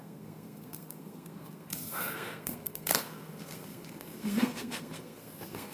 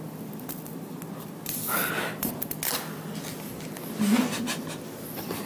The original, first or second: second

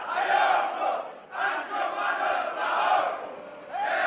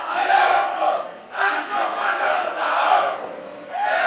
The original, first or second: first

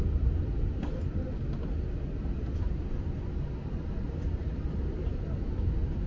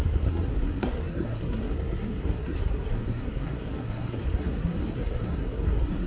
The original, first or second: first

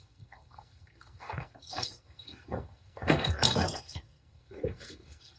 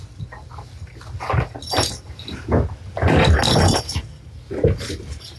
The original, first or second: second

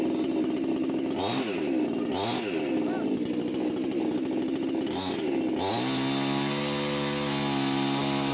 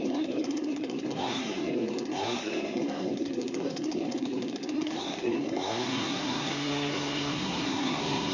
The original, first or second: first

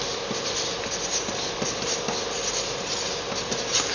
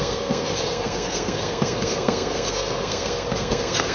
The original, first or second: first